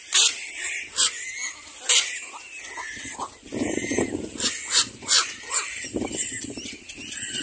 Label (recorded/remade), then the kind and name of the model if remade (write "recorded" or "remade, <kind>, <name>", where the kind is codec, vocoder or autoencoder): remade, vocoder, BigVGAN v2